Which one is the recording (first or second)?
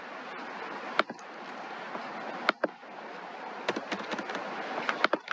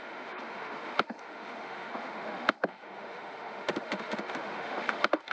first